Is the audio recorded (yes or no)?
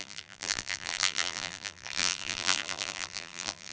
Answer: no